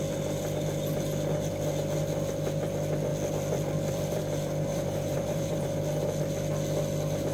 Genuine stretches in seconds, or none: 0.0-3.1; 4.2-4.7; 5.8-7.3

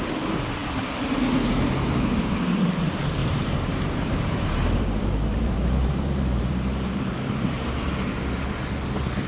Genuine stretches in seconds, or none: 0.0-3.2; 8.3-9.3

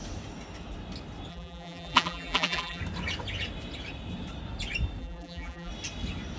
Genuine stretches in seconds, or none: 0.0-1.3; 2.8-5.0; 5.7-6.4